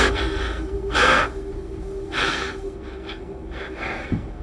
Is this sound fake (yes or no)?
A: yes